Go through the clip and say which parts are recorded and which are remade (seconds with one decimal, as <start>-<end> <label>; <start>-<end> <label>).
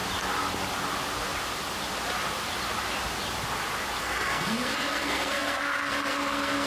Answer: 0.0-4.0 recorded; 4.0-6.7 remade